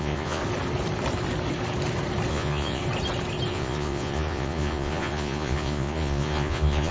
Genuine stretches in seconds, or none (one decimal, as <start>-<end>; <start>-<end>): 0.4-2.3; 2.8-3.5